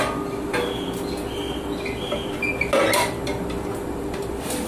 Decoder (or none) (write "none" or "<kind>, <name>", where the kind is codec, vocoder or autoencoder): none